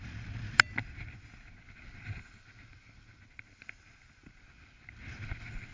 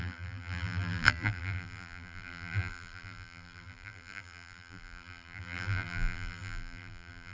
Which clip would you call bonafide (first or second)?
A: first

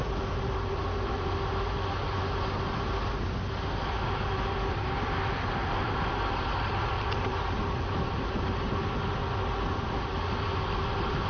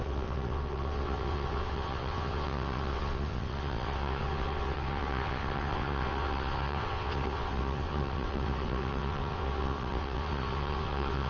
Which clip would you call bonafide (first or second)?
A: first